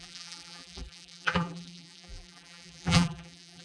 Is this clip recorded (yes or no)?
no